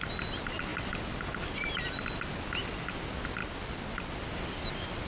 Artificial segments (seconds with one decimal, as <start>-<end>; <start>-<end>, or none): none